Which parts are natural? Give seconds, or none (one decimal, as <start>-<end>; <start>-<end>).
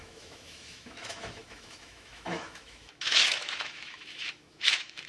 none